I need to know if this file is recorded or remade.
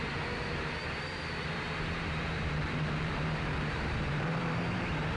remade